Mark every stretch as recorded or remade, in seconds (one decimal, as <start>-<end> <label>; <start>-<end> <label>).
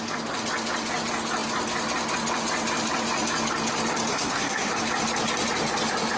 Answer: 0.0-4.1 recorded; 4.1-4.7 remade; 4.7-6.2 recorded